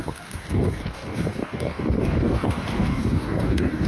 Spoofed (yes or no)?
yes